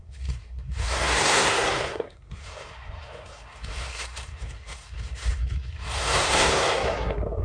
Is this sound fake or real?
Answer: fake